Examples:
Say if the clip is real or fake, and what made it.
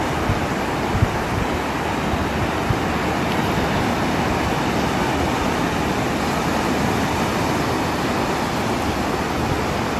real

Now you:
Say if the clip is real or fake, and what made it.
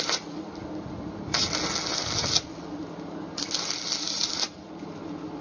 real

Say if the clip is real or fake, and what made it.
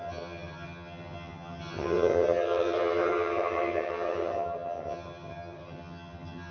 fake, vocoder, HiFi-GAN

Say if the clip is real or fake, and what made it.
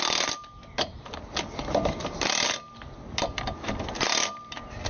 real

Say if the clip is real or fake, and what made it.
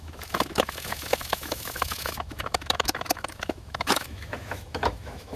fake, autoencoder, DAC-VAE